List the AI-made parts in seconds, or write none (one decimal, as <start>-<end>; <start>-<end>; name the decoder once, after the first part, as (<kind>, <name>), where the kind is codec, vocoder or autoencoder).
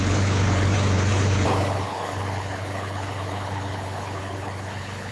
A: 0.0-5.1 (codec, HILCodec)